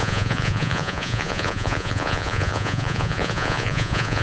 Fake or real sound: fake